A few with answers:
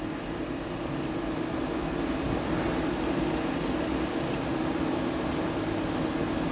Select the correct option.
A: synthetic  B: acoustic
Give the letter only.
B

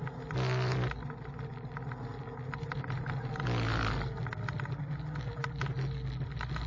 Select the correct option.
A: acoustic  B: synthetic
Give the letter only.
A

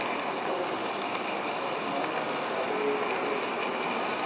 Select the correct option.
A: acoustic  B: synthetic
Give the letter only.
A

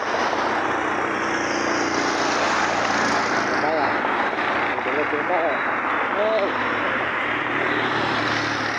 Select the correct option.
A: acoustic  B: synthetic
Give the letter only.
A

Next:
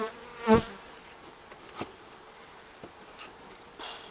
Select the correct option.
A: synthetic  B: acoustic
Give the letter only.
A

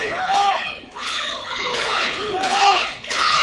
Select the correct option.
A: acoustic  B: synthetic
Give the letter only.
B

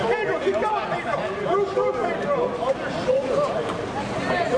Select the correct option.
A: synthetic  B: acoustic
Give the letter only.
B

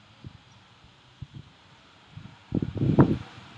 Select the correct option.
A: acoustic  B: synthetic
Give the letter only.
B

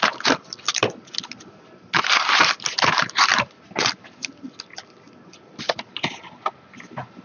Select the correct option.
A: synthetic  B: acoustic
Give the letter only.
B